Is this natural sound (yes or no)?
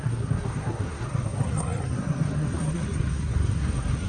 no